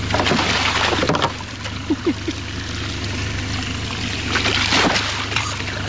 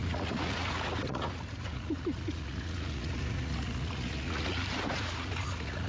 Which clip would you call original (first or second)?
first